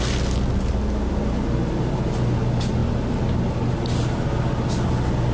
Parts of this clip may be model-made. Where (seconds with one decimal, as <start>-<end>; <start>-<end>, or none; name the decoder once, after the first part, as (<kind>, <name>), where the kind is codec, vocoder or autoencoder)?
none

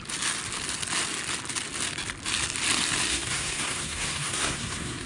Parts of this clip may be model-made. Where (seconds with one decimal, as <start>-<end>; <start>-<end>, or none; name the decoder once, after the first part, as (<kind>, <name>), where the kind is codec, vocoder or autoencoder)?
3.1-5.1 (codec, SNAC)

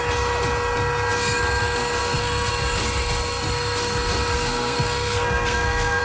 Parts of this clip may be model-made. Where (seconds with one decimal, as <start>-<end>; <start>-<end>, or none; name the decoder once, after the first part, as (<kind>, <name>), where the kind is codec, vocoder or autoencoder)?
2.0-2.5 (codec, SNAC); 4.3-6.0

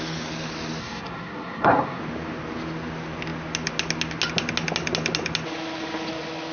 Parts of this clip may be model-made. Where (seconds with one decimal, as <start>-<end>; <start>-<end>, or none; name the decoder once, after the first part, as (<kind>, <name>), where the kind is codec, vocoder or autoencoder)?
0.8-2.0 (codec, SNAC)